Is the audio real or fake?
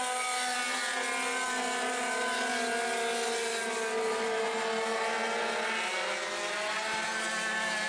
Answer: real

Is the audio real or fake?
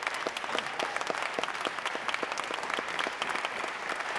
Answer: real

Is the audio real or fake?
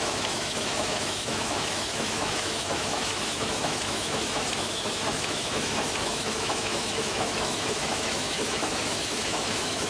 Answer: fake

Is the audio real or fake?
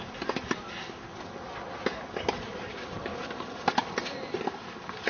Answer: real